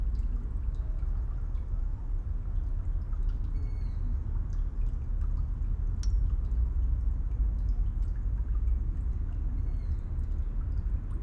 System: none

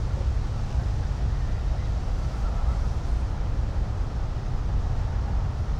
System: none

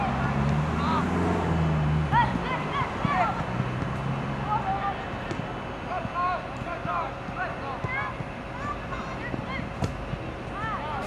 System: none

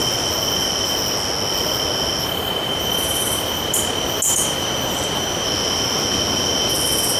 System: none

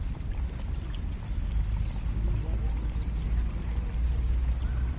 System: none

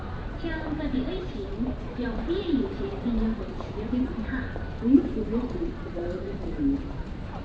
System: vocoder, BigVGAN v2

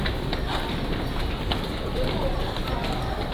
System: none